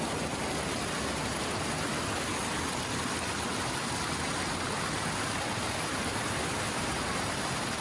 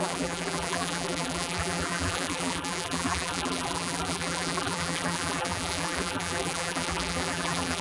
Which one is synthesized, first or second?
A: second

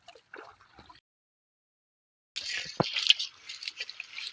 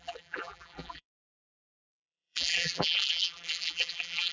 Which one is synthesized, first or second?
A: second